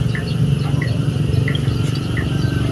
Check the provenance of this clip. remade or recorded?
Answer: remade